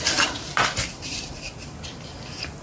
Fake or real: fake